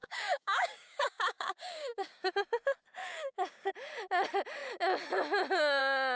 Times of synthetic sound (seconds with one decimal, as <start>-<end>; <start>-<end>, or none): 0.0-2.3; 3.0-3.7